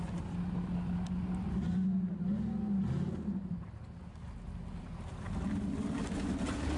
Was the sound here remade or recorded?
recorded